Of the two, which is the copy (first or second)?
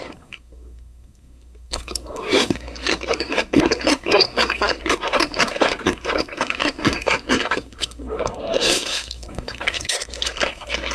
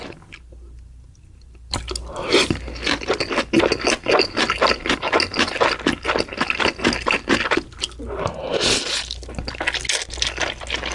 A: first